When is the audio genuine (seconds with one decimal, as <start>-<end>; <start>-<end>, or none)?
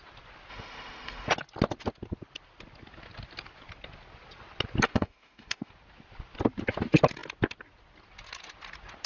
0.0-0.5; 1.3-4.9; 5.7-9.1